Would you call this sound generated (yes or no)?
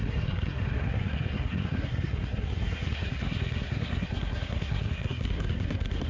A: yes